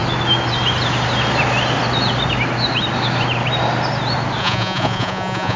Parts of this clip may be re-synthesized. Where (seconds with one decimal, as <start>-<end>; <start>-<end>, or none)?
4.4-5.6